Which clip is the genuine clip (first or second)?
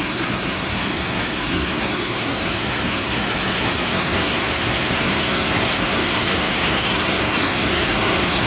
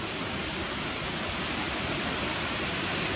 second